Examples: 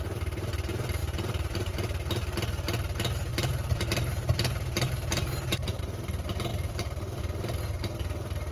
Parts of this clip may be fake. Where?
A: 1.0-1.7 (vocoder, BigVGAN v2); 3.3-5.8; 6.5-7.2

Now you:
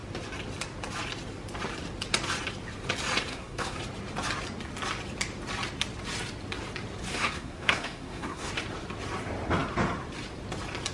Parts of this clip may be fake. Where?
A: 3.3-3.8 (codec, SNAC); 7.1-8.5

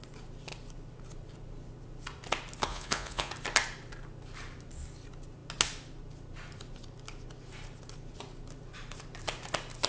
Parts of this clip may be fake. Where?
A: 2.7-3.3 (vocoder, Vocos)

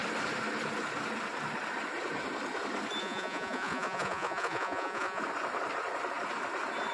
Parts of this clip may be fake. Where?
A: 3.0-5.2 (vocoder, Vocos)

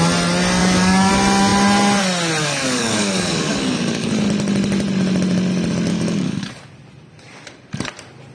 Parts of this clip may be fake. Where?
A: 0.6-1.1 (codec, DAC); 2.4-4.1; 5.9-6.5

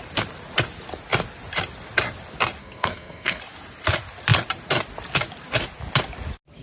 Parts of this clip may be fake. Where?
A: 2.6-3.4 (codec, SNAC)

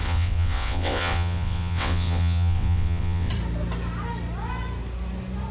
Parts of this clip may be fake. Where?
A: 0.0-3.3 (vocoder, WaveNeXt)

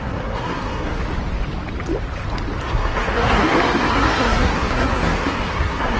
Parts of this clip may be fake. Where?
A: 0.0-1.0 (codec, SNAC); 2.6-6.0